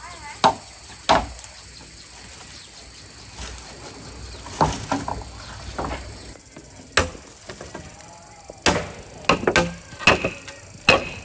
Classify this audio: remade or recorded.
recorded